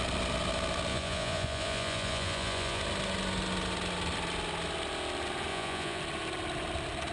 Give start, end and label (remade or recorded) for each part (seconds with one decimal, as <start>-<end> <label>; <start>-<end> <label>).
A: 0.0-0.9 recorded; 0.9-2.8 remade; 2.8-5.5 recorded; 5.5-6.0 remade; 6.0-7.1 recorded